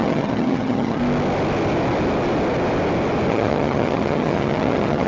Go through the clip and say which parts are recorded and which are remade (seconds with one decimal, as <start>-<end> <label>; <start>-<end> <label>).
0.0-1.0 remade; 1.0-3.3 recorded; 3.3-5.1 remade